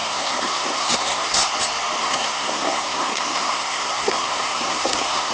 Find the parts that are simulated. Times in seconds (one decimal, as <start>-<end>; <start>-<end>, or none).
0.0-1.5; 2.0-5.3